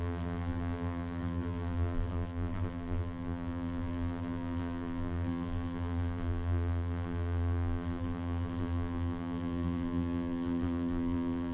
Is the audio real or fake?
fake